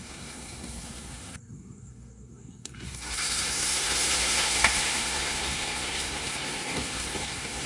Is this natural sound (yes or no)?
no